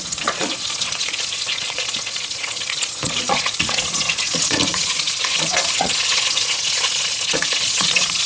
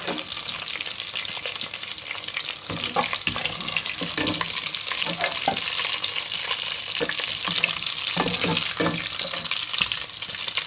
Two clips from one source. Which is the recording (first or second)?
second